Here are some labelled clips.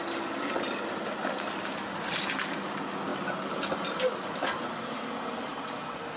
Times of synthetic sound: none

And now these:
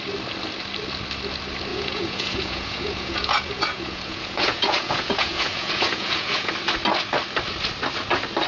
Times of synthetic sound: 1.7-6.5

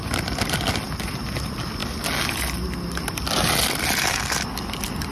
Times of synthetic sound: none

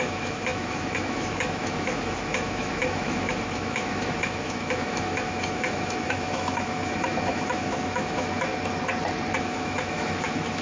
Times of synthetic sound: 0.0-8.5; 9.4-10.6

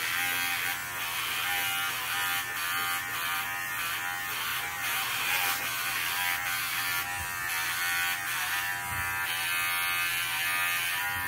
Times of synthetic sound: 4.5-5.3